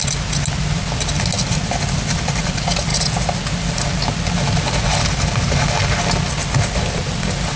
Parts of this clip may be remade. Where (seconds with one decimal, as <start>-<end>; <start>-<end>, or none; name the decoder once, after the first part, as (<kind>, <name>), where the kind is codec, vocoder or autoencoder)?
none